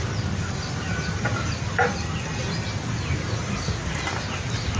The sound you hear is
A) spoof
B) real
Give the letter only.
B